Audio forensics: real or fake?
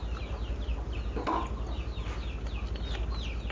real